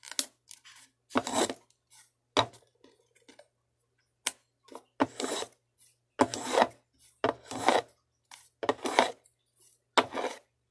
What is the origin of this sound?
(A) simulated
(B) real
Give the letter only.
B